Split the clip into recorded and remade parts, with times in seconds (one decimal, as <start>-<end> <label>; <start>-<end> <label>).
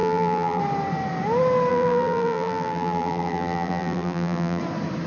0.0-0.6 remade; 0.6-1.7 recorded; 1.7-4.6 remade; 4.6-5.1 recorded